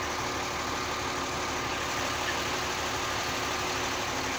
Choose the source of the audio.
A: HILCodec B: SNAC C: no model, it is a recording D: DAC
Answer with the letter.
C